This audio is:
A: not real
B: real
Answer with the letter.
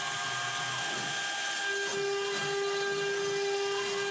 B